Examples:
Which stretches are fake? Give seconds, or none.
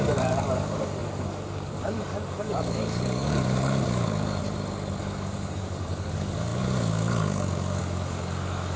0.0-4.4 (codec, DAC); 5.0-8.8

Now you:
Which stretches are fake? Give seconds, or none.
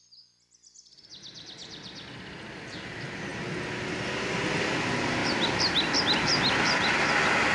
none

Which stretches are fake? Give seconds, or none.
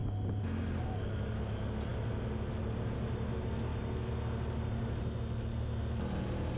none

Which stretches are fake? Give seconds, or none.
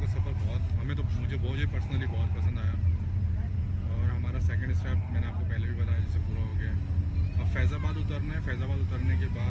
none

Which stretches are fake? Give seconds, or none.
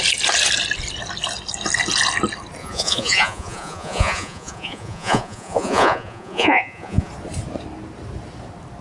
2.6-7.1 (vocoder, Vocos)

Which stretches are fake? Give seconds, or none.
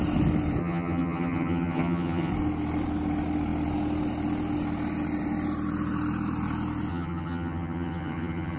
0.6-2.3 (vocoder, HiFi-GAN); 6.9-8.6